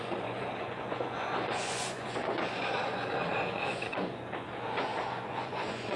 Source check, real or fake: fake